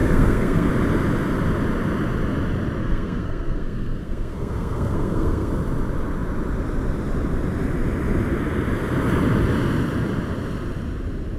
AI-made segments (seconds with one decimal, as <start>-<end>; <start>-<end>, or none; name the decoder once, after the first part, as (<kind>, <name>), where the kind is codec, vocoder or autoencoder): 0.0-0.7 (codec, SNAC); 2.8-5.5